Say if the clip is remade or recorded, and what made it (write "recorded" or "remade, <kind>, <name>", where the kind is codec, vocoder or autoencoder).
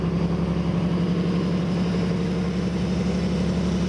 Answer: recorded